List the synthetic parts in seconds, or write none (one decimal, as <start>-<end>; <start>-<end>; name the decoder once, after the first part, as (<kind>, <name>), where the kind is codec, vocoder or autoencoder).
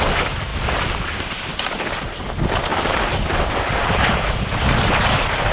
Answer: 0.0-0.5 (vocoder, BigVGAN v2); 1.9-5.5